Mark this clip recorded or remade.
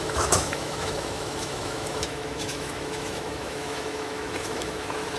remade